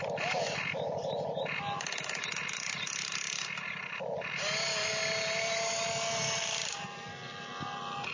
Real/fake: real